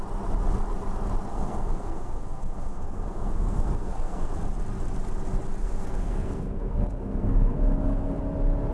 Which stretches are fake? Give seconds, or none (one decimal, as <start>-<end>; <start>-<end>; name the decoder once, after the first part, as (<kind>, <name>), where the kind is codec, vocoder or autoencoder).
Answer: 1.3-4.3 (codec, SNAC); 5.6-8.2